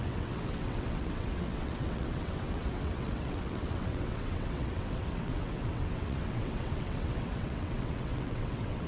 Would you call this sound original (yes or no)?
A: no